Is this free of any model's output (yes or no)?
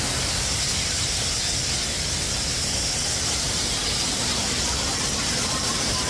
yes